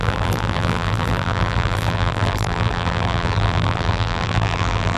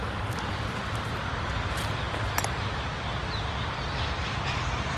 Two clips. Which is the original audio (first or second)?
second